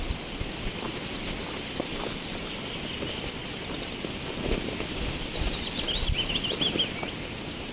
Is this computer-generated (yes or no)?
no